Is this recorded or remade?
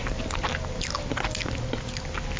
recorded